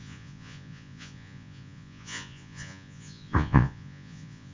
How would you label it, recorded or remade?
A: remade